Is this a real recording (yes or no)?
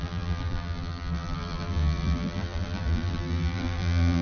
no